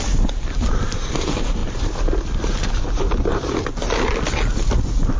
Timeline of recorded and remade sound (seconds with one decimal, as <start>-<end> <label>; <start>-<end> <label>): 0.0-5.2 recorded